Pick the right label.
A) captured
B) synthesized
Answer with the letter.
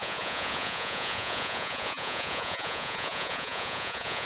B